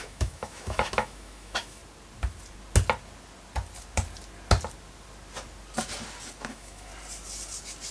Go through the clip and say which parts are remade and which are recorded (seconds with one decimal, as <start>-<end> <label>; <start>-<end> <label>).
0.0-1.8 remade; 1.8-6.5 recorded; 6.5-6.9 remade; 6.9-7.9 recorded